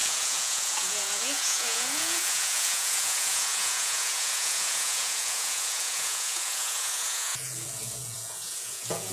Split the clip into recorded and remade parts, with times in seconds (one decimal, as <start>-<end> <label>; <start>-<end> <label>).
0.0-9.1 remade

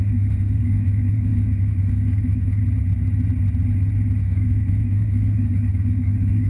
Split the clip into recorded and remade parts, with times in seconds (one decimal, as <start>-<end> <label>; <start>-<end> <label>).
0.0-2.6 remade; 2.6-4.2 recorded; 4.2-6.5 remade

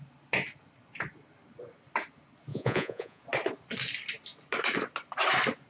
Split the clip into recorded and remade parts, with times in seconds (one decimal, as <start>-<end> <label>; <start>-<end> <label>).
0.0-2.5 recorded; 2.5-3.2 remade; 3.2-5.7 recorded